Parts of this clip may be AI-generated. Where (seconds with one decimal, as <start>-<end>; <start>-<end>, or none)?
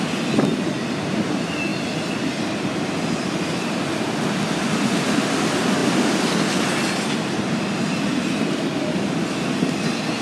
none